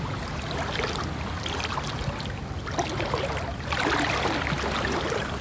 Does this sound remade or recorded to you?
recorded